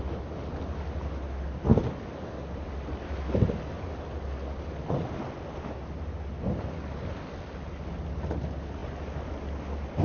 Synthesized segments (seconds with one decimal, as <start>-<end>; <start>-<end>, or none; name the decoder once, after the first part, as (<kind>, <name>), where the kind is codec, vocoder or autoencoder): none